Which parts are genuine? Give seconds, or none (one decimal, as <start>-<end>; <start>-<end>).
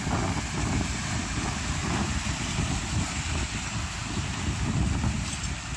0.0-5.8